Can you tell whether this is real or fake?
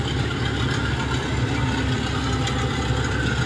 real